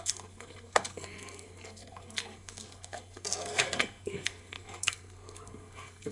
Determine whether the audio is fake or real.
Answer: fake